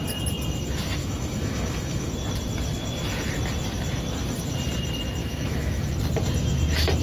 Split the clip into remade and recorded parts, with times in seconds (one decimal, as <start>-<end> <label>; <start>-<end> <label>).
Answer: 0.0-1.0 recorded; 1.0-2.1 remade; 2.1-5.2 recorded; 5.2-5.9 remade; 5.9-7.0 recorded